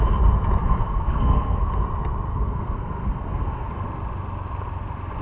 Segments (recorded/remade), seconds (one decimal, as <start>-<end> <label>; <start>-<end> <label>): 0.0-0.6 recorded; 0.6-1.7 remade; 1.7-2.3 recorded; 2.3-3.7 remade; 3.7-5.2 recorded